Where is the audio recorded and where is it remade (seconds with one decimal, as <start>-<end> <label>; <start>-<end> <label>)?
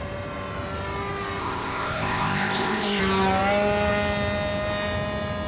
0.0-1.4 recorded; 1.4-3.0 remade; 3.0-5.5 recorded